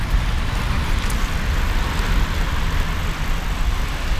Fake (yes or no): no